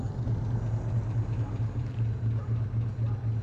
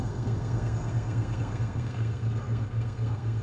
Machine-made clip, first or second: second